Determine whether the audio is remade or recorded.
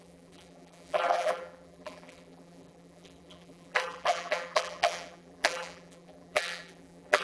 remade